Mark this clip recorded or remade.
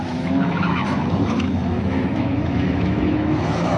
remade